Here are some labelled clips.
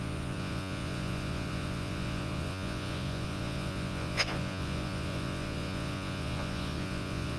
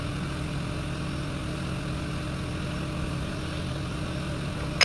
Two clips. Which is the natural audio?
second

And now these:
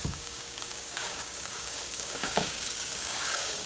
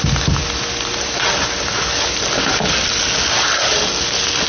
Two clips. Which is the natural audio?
second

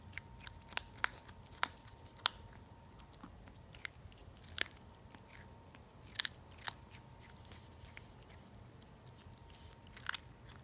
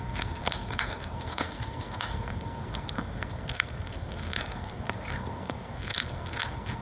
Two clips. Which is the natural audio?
first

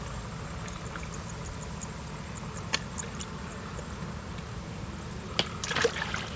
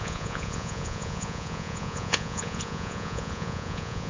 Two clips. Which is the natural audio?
first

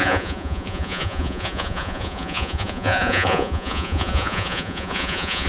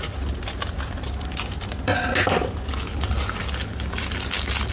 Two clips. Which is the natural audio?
second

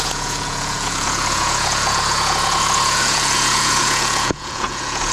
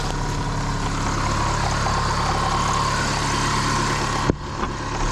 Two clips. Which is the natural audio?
second